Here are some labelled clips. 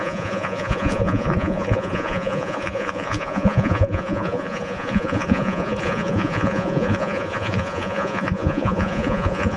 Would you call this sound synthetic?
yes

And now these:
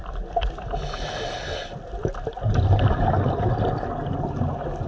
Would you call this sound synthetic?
no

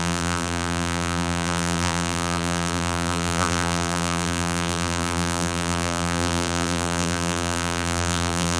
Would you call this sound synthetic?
yes